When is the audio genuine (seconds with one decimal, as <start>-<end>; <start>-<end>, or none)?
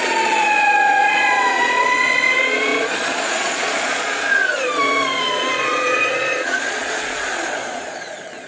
none